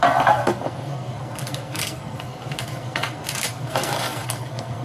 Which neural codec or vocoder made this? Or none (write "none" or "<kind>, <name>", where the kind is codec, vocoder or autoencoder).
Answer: codec, SNAC